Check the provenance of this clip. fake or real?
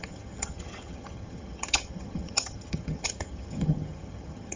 fake